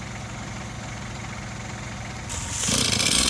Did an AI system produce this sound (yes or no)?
no